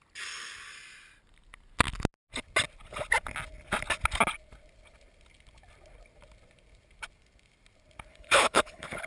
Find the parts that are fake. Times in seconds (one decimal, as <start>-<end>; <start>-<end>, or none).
8.1-9.1